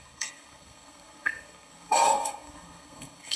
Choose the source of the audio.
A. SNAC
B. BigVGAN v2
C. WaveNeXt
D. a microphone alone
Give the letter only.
A